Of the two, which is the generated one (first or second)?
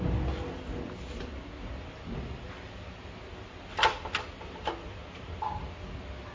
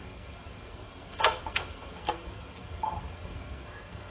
second